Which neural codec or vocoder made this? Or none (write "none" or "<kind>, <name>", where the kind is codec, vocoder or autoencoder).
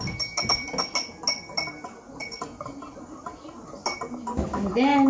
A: none